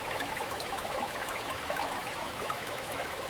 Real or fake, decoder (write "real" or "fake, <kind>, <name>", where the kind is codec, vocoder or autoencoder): fake, autoencoder, DAC-VAE